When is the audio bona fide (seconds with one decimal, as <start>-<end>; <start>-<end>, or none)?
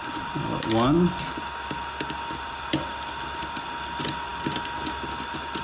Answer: 0.0-5.6